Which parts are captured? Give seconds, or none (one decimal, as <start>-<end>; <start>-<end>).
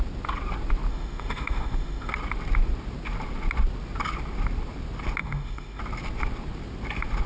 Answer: 0.0-0.9; 2.1-5.2; 5.8-7.3